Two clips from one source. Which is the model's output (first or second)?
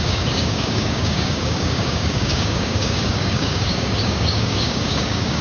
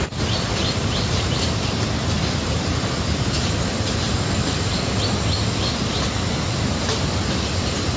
first